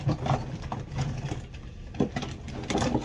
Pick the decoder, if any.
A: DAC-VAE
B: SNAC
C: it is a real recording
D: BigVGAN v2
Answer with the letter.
C